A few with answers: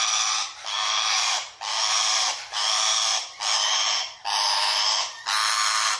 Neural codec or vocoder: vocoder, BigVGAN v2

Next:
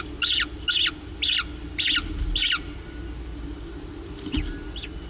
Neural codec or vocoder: none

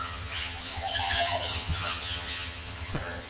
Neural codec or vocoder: vocoder, HiFi-GAN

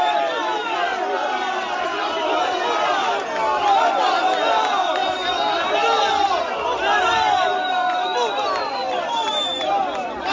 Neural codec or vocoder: vocoder, BigVGAN v2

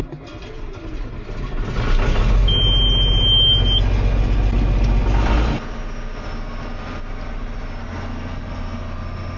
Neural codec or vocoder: none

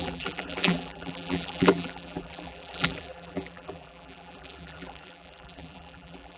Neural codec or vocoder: vocoder, BigVGAN v2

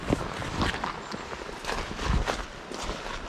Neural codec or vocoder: none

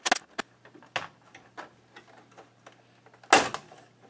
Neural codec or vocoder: none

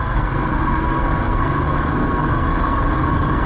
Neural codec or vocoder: codec, SNAC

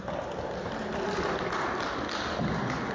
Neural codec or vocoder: none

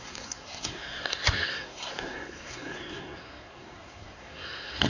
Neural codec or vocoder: codec, SNAC